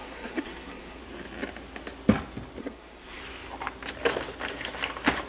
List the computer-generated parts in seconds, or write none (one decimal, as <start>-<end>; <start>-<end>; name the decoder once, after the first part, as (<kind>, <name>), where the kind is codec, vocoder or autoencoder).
0.0-1.0 (codec, SNAC); 2.6-3.2